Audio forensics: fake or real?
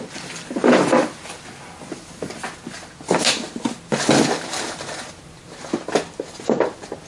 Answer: real